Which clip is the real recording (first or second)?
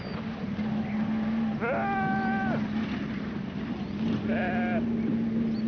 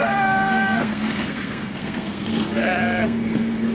first